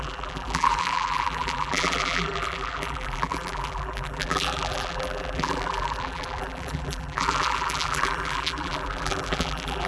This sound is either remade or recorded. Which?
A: remade